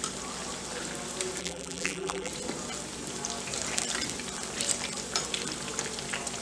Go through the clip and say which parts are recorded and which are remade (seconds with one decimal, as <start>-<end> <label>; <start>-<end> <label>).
0.0-1.4 recorded; 1.4-2.3 remade; 2.3-6.4 recorded